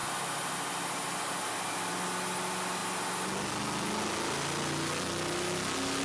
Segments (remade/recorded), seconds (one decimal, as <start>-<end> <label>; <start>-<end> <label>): 0.0-6.0 recorded